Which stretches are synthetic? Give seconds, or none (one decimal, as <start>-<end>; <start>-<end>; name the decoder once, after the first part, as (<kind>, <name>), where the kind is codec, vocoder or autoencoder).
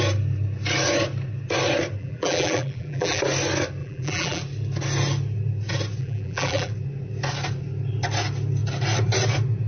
2.0-3.2 (vocoder, BigVGAN v2); 3.8-4.4; 6.0-6.7